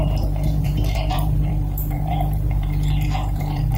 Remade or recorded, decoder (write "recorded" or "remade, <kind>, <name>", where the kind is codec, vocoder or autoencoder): remade, vocoder, BigVGAN v2